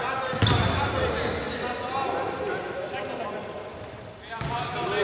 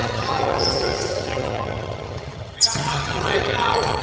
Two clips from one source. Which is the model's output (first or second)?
second